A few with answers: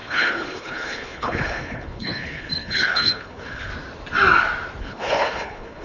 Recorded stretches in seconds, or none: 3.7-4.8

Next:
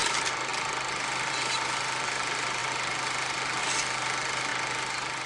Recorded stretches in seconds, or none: 4.5-5.3

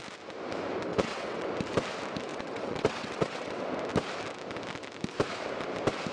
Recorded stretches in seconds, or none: 0.0-0.9; 1.5-2.3; 3.7-6.1

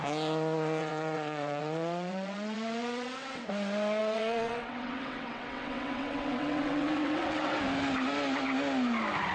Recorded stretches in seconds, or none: 0.0-0.8; 3.5-4.0; 7.6-9.3

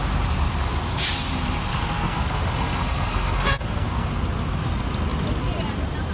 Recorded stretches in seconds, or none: 0.0-1.7; 4.1-6.1

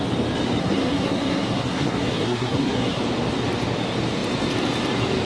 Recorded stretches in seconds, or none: 0.0-0.6; 3.0-5.2

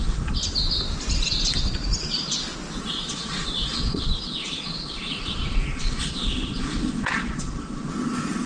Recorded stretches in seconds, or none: 0.4-2.8

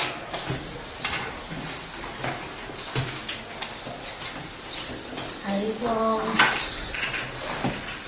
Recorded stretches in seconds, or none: 1.4-8.1